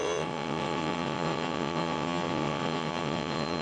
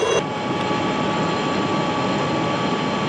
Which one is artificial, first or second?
first